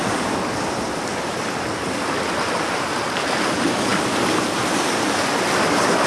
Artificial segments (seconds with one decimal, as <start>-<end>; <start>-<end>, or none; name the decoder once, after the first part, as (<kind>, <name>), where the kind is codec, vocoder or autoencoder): none